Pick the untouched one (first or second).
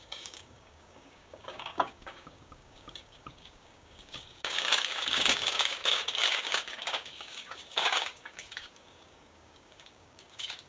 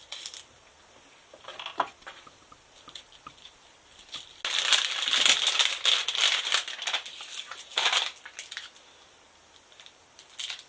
second